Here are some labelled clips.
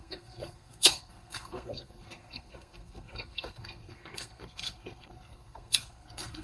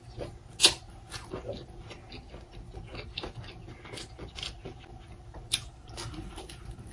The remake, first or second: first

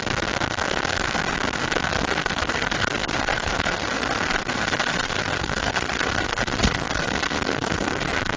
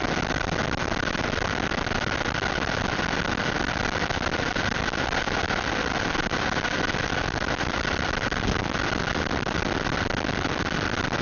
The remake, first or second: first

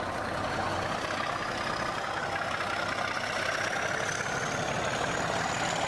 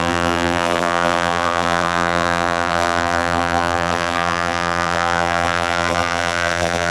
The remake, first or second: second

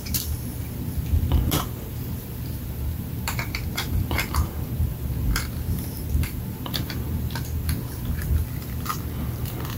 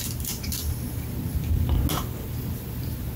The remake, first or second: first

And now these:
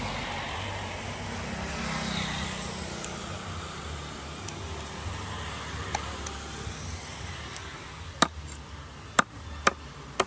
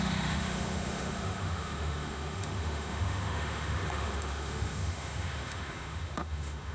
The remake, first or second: second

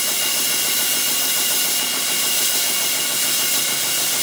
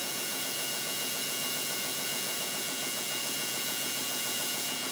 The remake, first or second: second